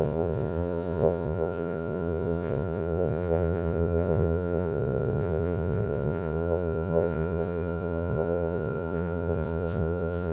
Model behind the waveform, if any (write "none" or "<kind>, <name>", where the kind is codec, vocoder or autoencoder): vocoder, Vocos